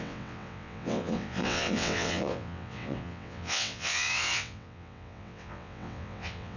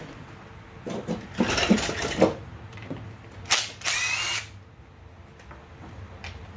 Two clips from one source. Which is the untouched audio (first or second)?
second